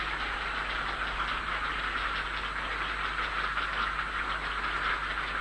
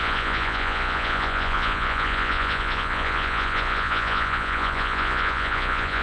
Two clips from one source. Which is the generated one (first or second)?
second